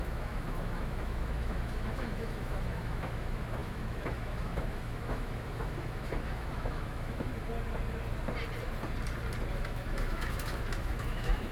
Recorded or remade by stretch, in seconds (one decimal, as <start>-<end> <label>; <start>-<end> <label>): 0.0-7.3 remade; 7.3-9.5 recorded; 9.5-11.5 remade